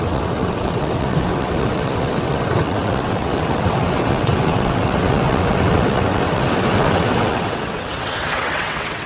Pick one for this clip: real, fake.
fake